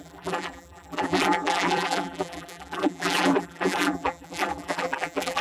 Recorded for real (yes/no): no